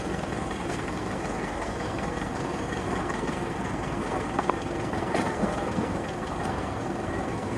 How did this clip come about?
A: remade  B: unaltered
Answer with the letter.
A